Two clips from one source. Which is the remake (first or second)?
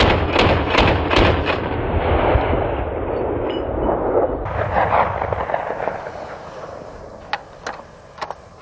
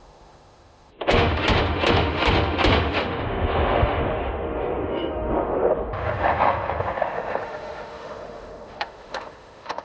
second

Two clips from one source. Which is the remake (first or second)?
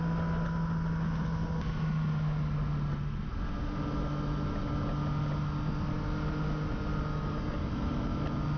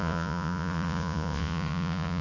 second